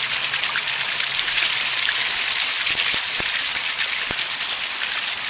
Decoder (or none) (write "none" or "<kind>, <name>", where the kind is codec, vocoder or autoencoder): none